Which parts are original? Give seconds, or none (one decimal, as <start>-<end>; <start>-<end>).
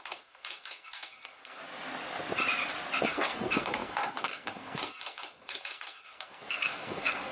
1.6-3.0